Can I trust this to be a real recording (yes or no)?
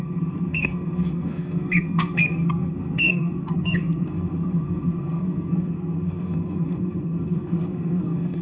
no